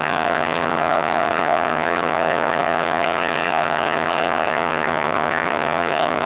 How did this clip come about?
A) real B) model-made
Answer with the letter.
B